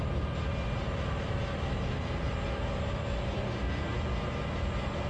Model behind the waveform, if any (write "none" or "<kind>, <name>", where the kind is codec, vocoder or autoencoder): none